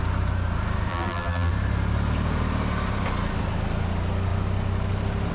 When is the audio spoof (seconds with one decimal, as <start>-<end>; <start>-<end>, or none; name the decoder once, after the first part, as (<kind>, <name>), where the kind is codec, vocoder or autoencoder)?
0.9-1.5 (vocoder, BigVGAN v2)